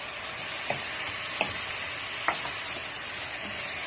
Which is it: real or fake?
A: real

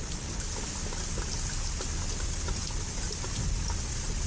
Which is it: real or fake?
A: real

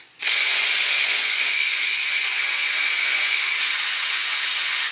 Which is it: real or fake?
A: fake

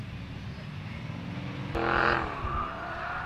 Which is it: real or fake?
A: real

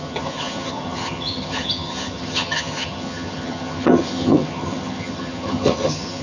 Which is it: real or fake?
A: fake